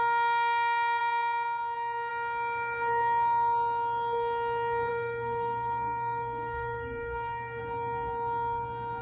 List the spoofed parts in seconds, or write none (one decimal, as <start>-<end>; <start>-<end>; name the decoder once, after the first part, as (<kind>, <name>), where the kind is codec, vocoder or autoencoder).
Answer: 4.9-7.6 (codec, SNAC)